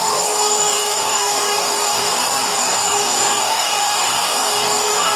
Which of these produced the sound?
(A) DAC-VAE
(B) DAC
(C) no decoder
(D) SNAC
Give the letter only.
B